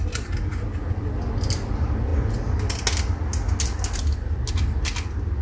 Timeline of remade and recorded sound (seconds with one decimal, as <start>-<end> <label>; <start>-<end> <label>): 0.0-5.4 recorded